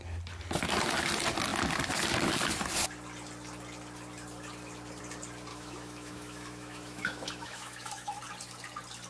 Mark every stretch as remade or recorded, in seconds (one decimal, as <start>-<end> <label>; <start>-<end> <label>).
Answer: 0.0-5.5 recorded; 5.5-8.2 remade; 8.2-9.1 recorded